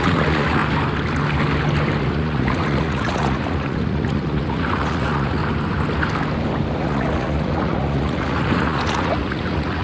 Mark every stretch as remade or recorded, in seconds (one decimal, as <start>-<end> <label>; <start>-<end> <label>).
0.0-0.6 remade; 0.6-2.0 recorded; 2.0-5.4 remade; 5.4-6.7 recorded; 6.7-9.8 remade